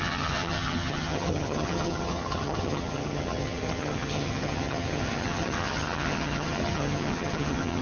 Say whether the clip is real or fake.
fake